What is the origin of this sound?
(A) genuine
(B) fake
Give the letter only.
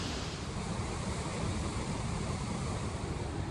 B